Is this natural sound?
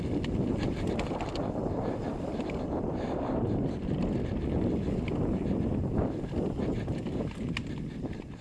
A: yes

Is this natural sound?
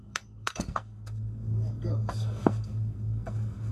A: no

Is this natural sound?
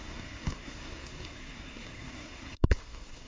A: no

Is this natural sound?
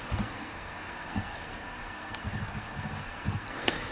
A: no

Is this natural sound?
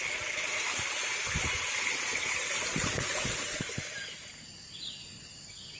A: yes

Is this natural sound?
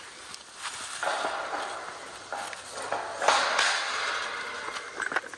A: yes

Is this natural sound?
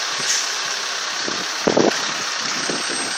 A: yes